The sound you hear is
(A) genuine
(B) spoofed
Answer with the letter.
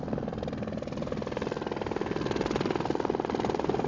A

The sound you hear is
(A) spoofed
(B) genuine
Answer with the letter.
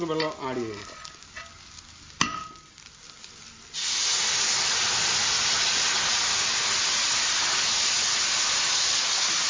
B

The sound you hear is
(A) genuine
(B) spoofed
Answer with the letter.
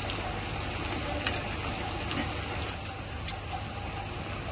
A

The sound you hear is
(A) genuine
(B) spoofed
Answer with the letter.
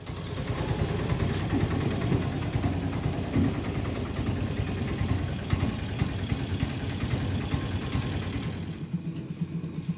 A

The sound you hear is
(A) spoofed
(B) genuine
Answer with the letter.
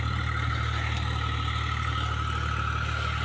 B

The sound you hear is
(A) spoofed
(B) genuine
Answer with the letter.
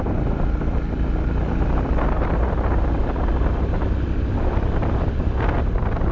B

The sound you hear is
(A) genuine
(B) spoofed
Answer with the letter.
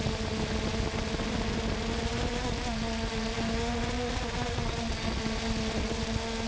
A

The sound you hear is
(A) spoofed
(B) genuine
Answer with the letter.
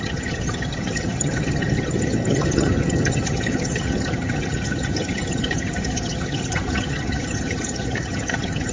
A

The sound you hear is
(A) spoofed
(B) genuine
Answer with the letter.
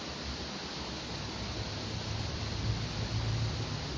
B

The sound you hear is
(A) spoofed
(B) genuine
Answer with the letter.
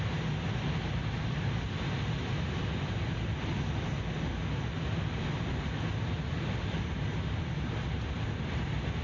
B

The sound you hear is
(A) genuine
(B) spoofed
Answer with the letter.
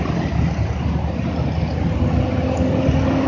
A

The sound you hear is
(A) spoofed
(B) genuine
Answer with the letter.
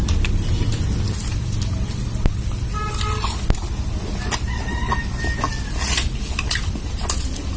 B